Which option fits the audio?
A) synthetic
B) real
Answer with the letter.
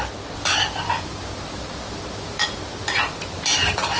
B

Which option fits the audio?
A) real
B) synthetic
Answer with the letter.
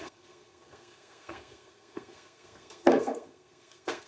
B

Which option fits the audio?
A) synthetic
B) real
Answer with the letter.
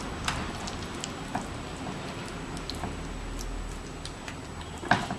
B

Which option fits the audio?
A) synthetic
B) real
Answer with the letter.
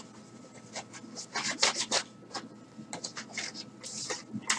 B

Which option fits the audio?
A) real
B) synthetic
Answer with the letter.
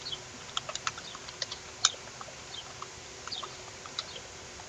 A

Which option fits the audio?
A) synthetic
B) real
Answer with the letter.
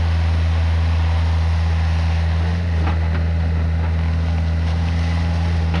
B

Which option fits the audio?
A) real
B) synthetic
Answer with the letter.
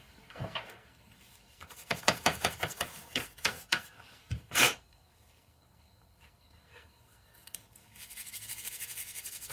B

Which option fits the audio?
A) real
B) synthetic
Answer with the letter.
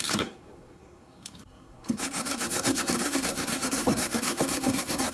B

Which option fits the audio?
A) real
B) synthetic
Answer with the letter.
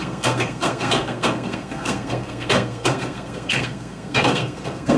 B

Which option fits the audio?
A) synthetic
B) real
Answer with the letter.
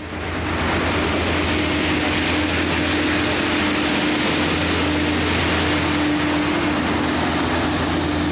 B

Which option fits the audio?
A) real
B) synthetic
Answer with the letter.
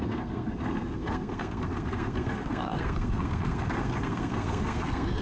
B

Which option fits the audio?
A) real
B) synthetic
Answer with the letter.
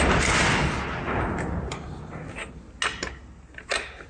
A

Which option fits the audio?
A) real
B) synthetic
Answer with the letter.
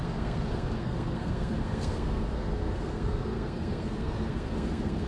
B